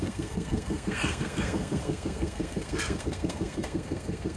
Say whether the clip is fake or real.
fake